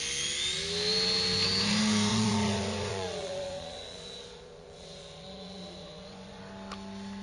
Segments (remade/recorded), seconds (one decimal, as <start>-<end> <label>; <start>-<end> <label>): 0.0-2.1 recorded; 2.1-6.4 remade; 6.4-7.2 recorded